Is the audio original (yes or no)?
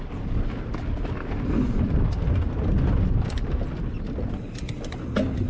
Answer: yes